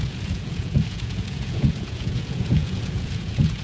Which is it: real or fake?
fake